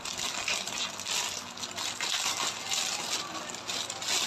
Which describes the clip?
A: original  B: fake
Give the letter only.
A